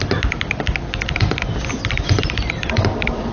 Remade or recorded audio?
recorded